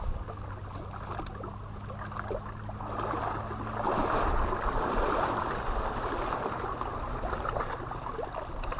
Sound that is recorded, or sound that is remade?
recorded